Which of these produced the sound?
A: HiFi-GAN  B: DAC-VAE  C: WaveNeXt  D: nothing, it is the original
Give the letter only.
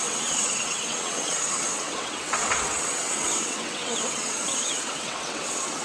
C